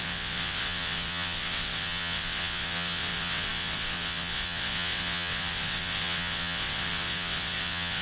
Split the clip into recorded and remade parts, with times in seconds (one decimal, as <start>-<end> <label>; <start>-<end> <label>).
0.0-8.0 remade